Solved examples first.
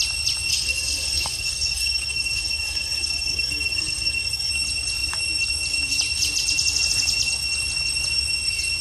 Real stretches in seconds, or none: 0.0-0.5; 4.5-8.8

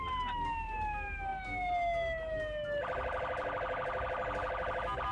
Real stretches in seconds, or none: 0.0-5.1

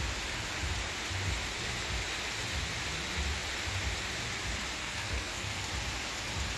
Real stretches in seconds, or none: 0.0-4.8; 5.7-6.6

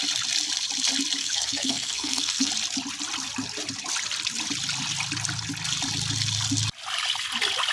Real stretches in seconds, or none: 0.0-1.2; 2.5-7.7

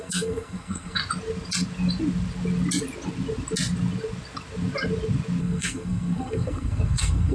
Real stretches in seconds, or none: 1.0-5.4

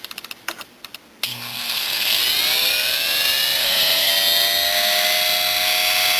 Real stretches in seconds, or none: 0.0-1.3; 2.2-3.6; 4.1-6.2